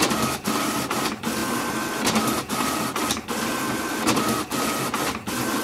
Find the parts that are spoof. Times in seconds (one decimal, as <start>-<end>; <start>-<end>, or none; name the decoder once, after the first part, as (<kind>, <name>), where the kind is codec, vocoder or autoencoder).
none